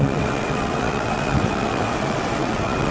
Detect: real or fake fake